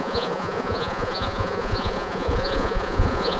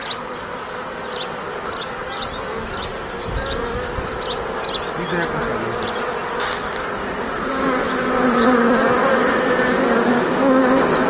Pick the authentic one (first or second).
second